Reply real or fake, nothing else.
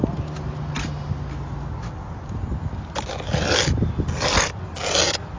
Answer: real